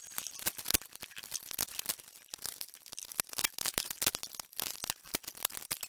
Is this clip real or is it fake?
real